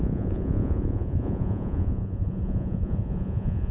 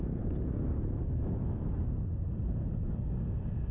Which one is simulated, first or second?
first